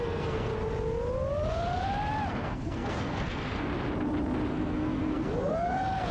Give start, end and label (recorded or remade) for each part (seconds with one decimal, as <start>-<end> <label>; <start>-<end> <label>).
0.0-0.5 remade; 0.5-2.3 recorded; 2.3-3.7 remade; 3.7-4.5 recorded; 4.5-6.1 remade